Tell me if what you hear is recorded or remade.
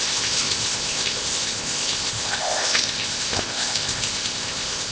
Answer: remade